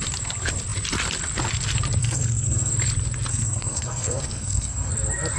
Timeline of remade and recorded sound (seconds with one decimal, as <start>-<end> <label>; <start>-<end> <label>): 0.0-2.0 recorded; 2.0-2.7 remade; 2.7-3.3 recorded; 3.3-4.9 remade; 4.9-5.4 recorded